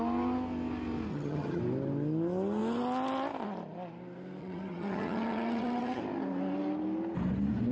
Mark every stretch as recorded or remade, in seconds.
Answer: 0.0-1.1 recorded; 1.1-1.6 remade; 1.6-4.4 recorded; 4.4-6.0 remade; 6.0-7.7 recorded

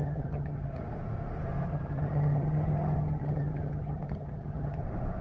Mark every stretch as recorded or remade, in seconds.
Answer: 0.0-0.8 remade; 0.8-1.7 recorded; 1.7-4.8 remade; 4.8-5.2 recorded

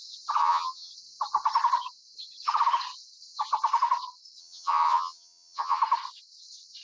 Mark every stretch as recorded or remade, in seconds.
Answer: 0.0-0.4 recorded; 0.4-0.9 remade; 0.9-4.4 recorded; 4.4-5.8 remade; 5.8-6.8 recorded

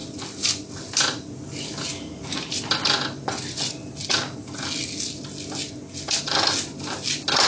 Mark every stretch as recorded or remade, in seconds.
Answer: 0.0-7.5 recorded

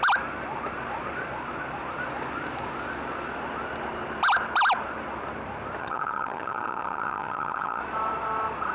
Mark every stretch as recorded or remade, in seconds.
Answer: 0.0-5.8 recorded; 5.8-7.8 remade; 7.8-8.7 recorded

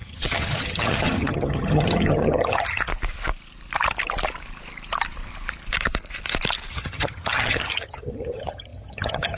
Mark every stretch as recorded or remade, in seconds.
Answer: 0.0-2.9 remade; 2.9-6.7 recorded; 6.7-9.4 remade